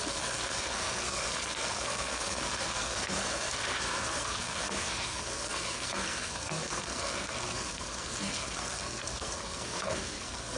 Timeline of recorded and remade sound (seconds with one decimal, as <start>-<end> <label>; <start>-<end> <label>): 0.0-10.6 remade